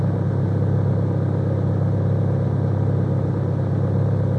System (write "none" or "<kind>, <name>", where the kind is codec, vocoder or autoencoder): none